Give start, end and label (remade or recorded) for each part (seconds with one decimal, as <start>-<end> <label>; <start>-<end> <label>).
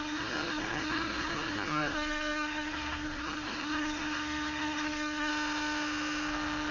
0.0-5.3 remade; 5.3-6.7 recorded